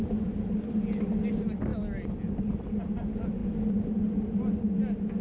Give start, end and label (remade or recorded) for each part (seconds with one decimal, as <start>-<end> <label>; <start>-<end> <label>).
0.0-5.2 recorded